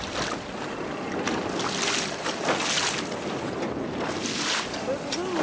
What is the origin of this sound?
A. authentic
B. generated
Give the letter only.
A